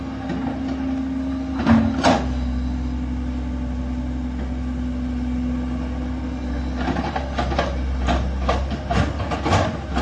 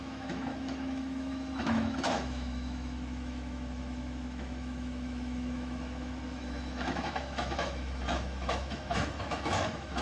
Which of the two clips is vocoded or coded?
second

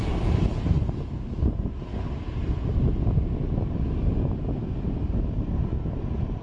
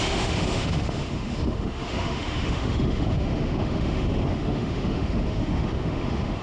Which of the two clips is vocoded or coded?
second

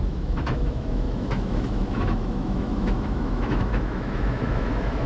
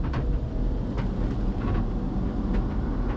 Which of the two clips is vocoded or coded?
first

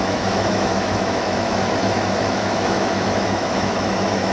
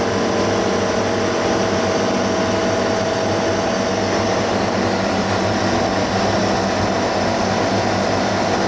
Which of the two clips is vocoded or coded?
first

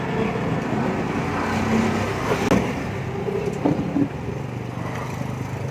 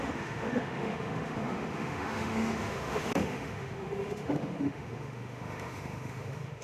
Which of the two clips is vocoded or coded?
second